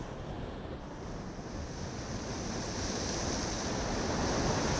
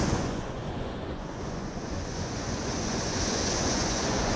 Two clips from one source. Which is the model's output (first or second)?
second